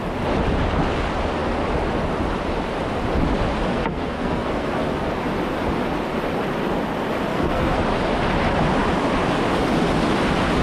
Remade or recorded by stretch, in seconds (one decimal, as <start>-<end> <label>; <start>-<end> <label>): 0.0-3.7 recorded; 3.7-5.1 remade; 5.1-7.3 recorded; 7.3-7.8 remade; 7.8-10.6 recorded